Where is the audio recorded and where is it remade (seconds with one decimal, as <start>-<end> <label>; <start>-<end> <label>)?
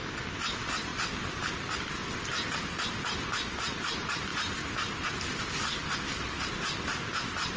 0.0-7.6 recorded